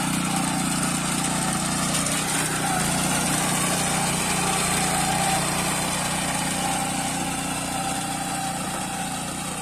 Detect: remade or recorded recorded